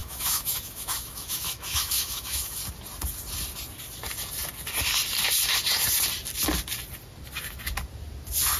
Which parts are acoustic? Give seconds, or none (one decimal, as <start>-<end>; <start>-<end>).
2.6-8.6